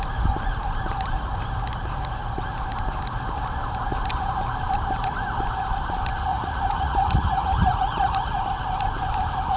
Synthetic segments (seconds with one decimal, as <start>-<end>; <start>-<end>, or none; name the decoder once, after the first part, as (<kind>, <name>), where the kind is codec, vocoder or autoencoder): 6.3-8.4 (vocoder, Vocos)

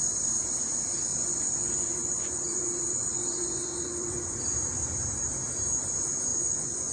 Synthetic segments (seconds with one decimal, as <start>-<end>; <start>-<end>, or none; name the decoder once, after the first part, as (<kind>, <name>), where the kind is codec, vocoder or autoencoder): 1.1-4.4 (vocoder, Vocos); 6.3-6.9

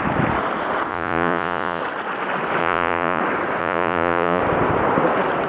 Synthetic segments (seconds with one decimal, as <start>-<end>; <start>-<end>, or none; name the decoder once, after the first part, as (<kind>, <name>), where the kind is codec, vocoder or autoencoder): 0.9-1.8 (vocoder, Vocos); 2.6-3.2; 3.6-4.4

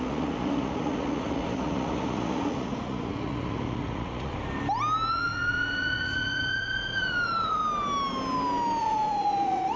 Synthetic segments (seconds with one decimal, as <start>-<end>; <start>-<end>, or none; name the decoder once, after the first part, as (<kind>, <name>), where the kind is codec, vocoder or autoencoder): 0.0-4.3 (vocoder, Vocos); 5.1-7.6; 8.8-9.8